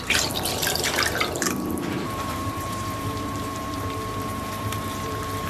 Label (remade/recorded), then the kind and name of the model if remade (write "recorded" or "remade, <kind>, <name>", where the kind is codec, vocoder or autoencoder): remade, vocoder, BigVGAN v2